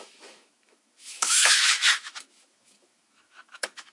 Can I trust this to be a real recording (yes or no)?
no